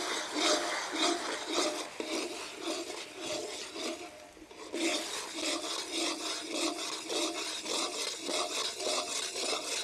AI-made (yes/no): no